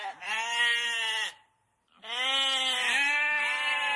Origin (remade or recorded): recorded